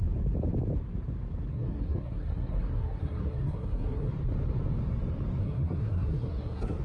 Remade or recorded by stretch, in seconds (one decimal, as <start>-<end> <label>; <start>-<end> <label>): 0.0-1.5 recorded; 1.5-4.1 remade; 4.1-5.4 recorded; 5.4-6.8 remade